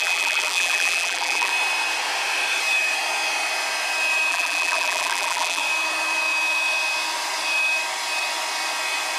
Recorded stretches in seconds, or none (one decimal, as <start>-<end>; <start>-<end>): 1.5-4.3; 5.6-9.2